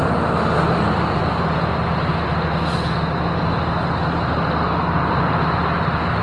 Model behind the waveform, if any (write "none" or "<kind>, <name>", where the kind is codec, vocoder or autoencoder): none